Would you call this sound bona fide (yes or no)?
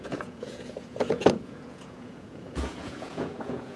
no